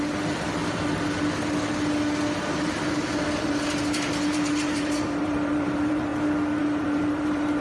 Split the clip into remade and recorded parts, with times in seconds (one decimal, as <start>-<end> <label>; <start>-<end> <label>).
0.0-0.6 remade; 0.6-3.4 recorded; 3.4-6.1 remade; 6.1-6.6 recorded; 6.6-7.6 remade